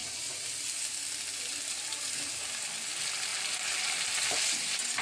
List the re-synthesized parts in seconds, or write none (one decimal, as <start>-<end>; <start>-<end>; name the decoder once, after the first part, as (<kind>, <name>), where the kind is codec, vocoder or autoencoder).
none